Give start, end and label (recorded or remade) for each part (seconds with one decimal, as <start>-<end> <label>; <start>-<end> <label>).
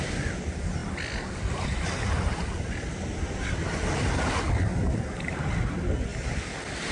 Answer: 0.0-6.9 recorded